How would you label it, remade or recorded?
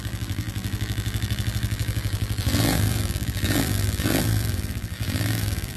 remade